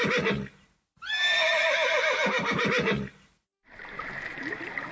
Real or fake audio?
real